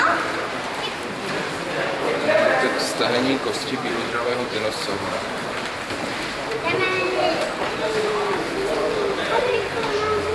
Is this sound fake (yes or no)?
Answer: yes